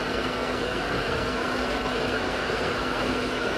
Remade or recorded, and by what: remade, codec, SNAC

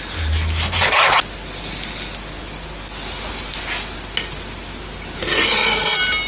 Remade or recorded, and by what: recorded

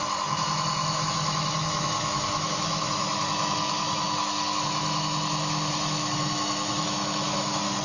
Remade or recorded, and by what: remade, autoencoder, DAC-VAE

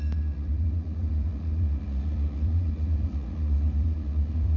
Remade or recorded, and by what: remade, vocoder, Vocos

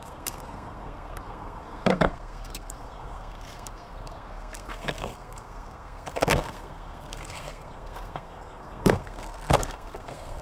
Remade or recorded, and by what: remade, codec, SNAC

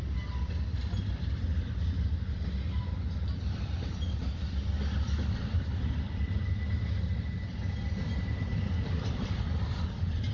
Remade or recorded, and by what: recorded